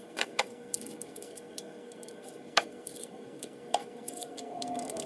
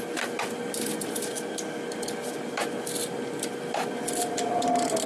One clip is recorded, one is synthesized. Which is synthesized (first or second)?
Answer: first